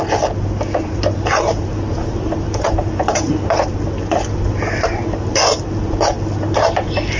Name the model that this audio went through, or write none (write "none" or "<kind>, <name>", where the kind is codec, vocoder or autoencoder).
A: none